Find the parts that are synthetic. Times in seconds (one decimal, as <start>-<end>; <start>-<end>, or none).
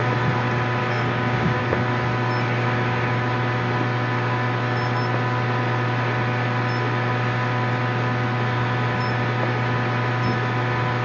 0.8-1.6